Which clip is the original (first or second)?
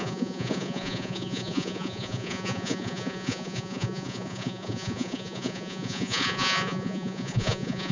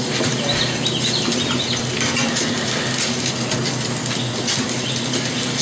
second